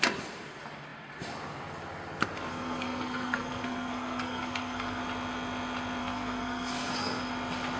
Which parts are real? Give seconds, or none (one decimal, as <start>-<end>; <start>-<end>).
0.0-2.5; 5.0-6.0; 7.2-7.8